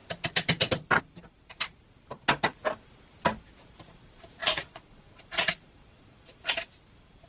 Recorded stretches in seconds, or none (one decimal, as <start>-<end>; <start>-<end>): 0.0-4.4; 6.5-7.3